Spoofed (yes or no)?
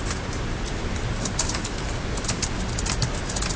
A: no